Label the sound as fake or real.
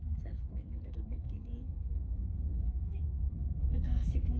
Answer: fake